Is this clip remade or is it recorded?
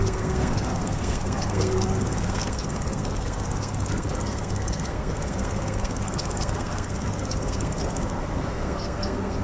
remade